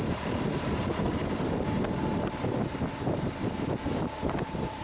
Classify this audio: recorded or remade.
recorded